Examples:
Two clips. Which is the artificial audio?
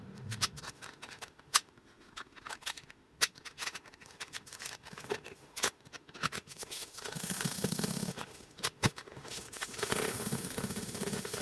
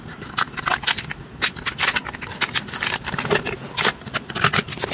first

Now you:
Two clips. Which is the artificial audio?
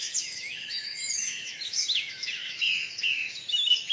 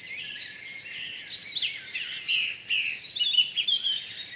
first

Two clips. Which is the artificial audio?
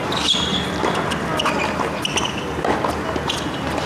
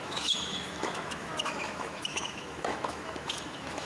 second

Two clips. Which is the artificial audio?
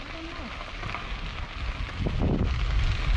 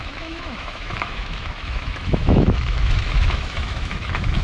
second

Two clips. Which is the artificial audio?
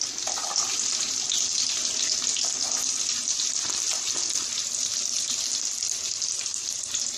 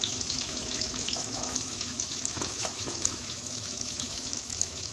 second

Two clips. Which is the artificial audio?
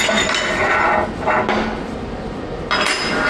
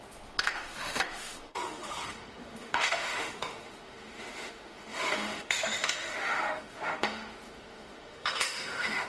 second